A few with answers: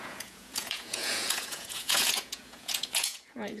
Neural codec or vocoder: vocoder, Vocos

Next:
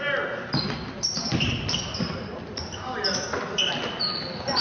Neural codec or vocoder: none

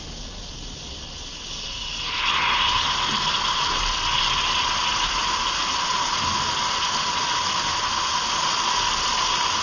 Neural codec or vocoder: none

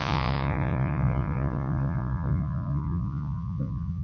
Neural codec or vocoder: vocoder, Vocos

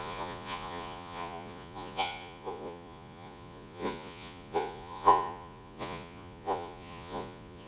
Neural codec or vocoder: vocoder, Vocos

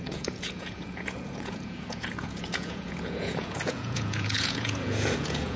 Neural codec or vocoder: vocoder, Vocos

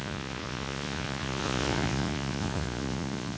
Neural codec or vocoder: vocoder, Vocos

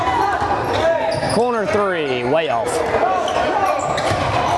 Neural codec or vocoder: none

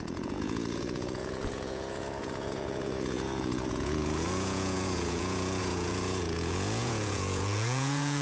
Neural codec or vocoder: vocoder, Vocos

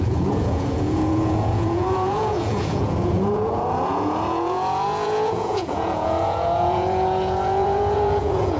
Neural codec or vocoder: vocoder, Vocos